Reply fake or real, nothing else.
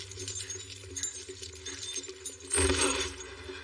real